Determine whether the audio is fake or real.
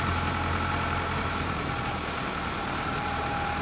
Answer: fake